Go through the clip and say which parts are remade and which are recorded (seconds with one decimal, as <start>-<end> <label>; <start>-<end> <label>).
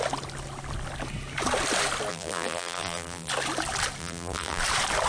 0.0-2.1 recorded; 2.1-3.3 remade; 3.3-4.0 recorded; 4.0-4.6 remade; 4.6-5.1 recorded